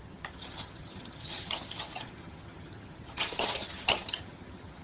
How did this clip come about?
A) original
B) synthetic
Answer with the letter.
B